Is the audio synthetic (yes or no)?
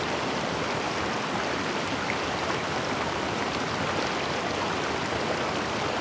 no